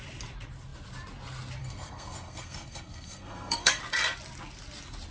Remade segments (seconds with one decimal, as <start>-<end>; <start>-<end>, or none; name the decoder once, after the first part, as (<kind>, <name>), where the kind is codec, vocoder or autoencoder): 1.6-3.8 (codec, SNAC)